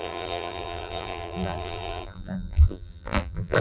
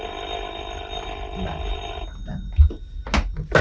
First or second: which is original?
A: second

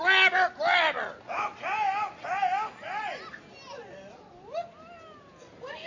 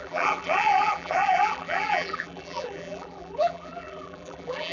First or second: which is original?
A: first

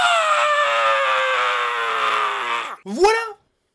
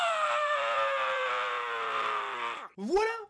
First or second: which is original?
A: first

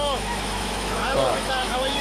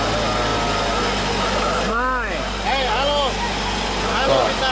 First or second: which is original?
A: second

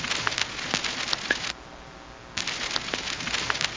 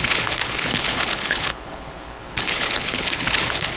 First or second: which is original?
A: first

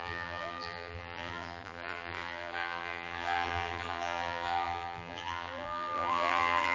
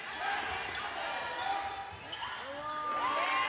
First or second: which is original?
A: second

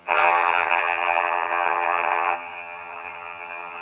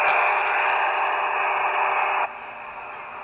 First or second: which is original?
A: second